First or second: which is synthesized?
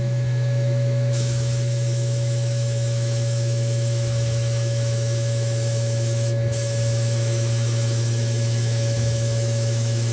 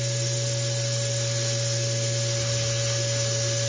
first